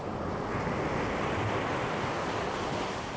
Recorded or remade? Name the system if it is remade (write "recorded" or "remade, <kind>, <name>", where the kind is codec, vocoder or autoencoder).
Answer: recorded